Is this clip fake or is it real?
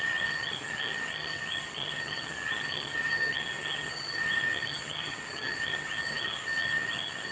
fake